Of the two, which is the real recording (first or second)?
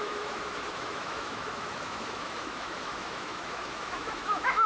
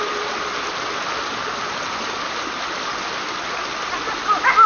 second